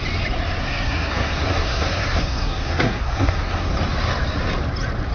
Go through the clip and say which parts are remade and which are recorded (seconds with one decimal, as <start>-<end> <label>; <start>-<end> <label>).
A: 0.0-0.6 recorded; 0.6-3.7 remade; 3.7-5.1 recorded